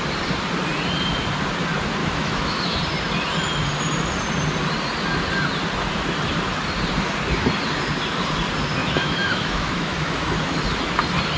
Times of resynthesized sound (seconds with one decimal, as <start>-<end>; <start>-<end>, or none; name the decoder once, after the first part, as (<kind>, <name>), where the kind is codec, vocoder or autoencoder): 2.0-2.8 (autoencoder, DAC-VAE); 8.8-10.6